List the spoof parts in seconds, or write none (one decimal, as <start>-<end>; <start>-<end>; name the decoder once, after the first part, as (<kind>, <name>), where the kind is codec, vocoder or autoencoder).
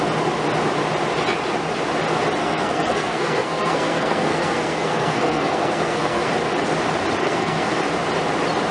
2.4-6.3 (codec, SNAC); 7.2-7.7